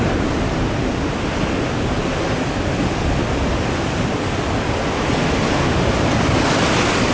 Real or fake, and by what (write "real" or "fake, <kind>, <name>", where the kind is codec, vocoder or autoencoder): real